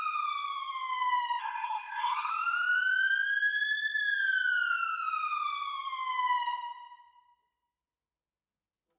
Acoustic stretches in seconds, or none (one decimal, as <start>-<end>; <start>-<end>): 0.0-1.4; 2.3-9.0